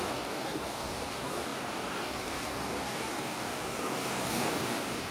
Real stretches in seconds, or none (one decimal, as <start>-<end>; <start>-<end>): none